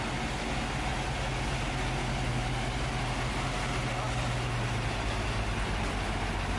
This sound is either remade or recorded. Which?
recorded